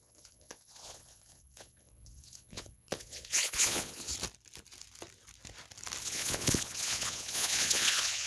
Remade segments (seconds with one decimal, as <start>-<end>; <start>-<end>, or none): 0.0-4.1; 6.0-8.3